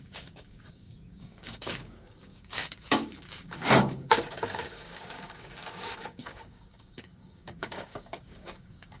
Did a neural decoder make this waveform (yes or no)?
yes